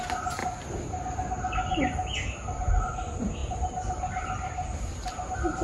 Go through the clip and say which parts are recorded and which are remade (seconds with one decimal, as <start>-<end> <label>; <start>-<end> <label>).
0.0-0.4 remade; 0.4-2.8 recorded; 2.8-5.6 remade